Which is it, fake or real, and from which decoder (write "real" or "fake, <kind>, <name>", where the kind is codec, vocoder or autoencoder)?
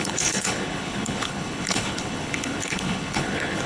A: fake, codec, HILCodec